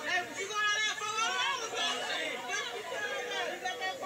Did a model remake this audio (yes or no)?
no